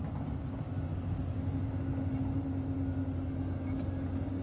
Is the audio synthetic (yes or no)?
no